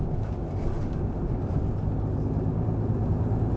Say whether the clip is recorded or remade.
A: recorded